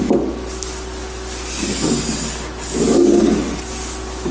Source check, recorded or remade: recorded